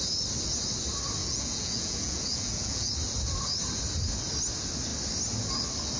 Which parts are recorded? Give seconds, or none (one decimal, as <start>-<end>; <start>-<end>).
0.0-1.2; 2.9-6.0